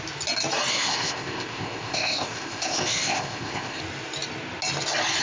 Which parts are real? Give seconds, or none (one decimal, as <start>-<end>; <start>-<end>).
0.0-0.7; 3.8-5.2